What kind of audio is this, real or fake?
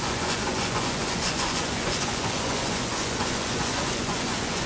fake